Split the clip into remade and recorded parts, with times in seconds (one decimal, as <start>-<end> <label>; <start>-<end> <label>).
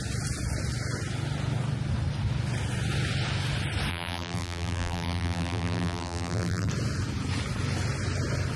0.0-3.9 recorded; 3.9-6.7 remade; 6.7-8.6 recorded